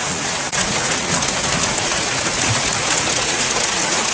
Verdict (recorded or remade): remade